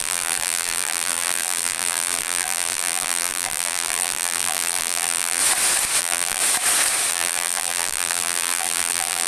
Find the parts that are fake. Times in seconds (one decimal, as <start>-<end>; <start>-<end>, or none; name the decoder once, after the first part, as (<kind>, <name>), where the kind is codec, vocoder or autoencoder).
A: 0.0-5.4 (vocoder, BigVGAN v2); 6.0-6.4; 7.1-9.3